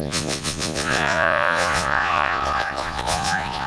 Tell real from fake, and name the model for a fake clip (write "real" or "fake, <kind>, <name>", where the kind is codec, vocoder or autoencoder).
fake, vocoder, Vocos